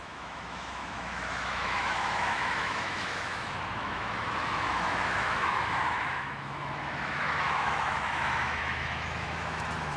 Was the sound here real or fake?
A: fake